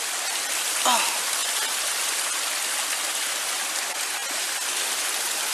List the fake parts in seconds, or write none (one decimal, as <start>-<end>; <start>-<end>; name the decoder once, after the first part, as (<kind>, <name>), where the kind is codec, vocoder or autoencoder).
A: none